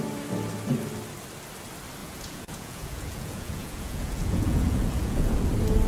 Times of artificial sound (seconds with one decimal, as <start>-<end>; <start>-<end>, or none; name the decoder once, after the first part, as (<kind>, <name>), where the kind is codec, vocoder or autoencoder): 2.0-5.5 (vocoder, Vocos)